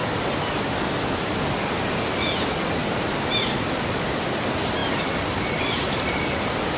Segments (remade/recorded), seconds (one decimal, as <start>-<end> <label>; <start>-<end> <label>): 0.0-2.8 recorded; 2.8-3.5 remade; 3.5-4.8 recorded; 4.8-6.3 remade; 6.3-6.8 recorded